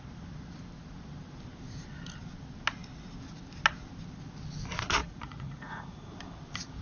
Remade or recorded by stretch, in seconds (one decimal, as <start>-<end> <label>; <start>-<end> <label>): 0.0-5.0 recorded; 5.0-6.1 remade; 6.1-6.8 recorded